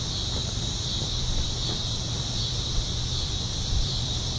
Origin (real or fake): fake